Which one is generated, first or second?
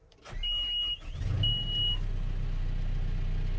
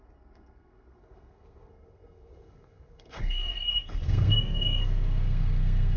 second